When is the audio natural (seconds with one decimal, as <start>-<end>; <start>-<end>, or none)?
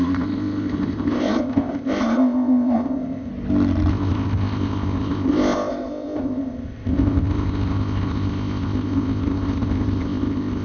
3.3-3.9